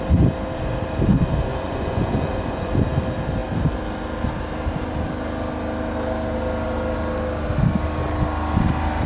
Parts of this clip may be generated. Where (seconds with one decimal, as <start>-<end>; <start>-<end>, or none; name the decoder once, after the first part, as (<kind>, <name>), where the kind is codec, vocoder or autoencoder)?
1.5-2.7 (vocoder, Vocos)